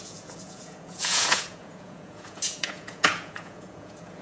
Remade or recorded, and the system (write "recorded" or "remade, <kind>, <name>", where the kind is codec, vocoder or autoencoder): remade, vocoder, Vocos